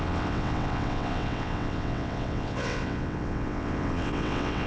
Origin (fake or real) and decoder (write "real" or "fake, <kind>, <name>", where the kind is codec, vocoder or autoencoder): fake, vocoder, WaveNeXt